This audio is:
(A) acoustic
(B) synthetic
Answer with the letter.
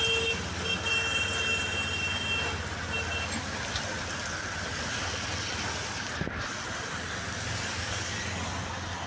A